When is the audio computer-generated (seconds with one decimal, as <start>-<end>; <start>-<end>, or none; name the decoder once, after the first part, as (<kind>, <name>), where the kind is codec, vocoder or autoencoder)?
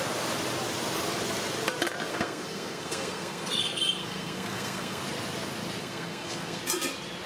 2.1-5.0 (codec, SNAC); 5.8-6.6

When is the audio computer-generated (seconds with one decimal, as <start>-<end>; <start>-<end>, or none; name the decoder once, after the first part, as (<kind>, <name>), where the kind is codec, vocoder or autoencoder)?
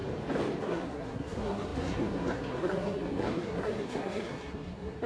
0.6-5.1 (codec, SNAC)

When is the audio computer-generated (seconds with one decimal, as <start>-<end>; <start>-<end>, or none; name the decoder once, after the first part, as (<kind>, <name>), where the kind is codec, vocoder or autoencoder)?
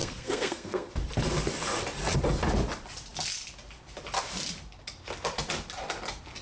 0.0-0.9 (codec, SNAC)